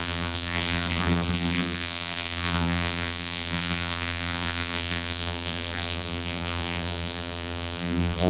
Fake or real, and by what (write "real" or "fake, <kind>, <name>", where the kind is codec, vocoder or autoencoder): fake, vocoder, BigVGAN v2